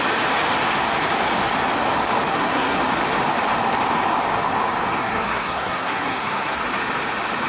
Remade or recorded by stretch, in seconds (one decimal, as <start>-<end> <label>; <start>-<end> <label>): 0.0-2.3 recorded; 2.3-2.8 remade; 2.8-5.0 recorded; 5.0-6.6 remade; 6.6-7.5 recorded